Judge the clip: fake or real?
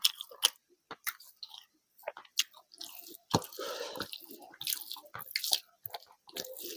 real